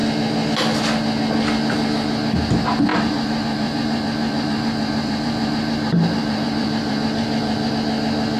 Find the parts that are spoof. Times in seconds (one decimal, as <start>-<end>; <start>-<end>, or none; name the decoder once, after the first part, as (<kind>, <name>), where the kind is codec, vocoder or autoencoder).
2.9-7.7 (vocoder, BigVGAN v2)

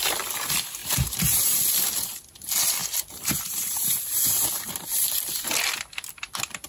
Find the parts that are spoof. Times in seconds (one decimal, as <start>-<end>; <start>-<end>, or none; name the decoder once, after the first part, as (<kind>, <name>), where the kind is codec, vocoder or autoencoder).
0.8-1.6 (vocoder, BigVGAN v2); 2.8-4.9

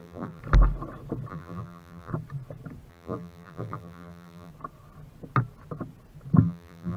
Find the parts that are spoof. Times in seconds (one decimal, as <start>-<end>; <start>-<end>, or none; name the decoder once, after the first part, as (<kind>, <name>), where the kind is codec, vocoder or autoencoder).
0.0-0.4 (vocoder, BigVGAN v2); 1.3-2.1; 2.9-4.5; 6.4-7.0

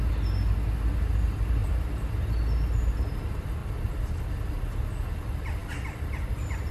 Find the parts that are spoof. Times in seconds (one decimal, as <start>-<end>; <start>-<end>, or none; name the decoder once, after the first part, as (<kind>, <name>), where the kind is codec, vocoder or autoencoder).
1.6-2.1 (vocoder, BigVGAN v2); 3.6-4.5; 5.6-6.7

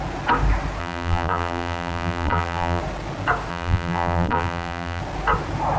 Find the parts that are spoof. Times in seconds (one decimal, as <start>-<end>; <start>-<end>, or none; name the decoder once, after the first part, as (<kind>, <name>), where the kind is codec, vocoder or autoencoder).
0.8-2.8 (vocoder, BigVGAN v2); 3.5-5.0

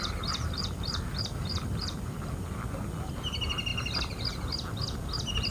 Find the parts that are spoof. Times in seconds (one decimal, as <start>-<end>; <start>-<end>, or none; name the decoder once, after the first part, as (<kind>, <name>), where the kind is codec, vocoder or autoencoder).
0.0-2.3 (vocoder, BigVGAN v2)

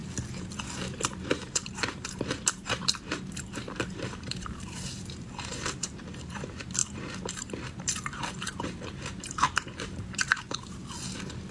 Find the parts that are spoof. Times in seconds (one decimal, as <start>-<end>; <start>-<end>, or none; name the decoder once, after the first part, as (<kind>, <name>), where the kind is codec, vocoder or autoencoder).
1.3-6.8 (vocoder, BigVGAN v2); 7.3-10.8